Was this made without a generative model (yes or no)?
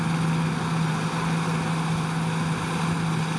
yes